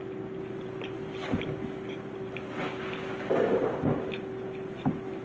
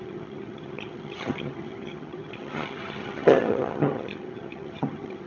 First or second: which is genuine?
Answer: first